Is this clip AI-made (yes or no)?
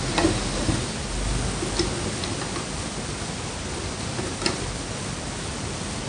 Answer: no